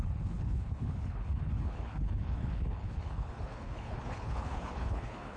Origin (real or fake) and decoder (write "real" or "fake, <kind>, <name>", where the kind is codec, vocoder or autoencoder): fake, codec, HILCodec